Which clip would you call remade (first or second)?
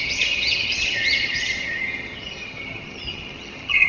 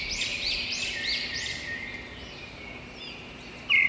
first